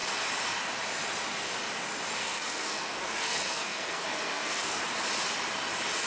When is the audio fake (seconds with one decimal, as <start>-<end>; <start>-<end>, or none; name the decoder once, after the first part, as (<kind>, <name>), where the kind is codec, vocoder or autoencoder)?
2.2-4.8 (codec, SNAC)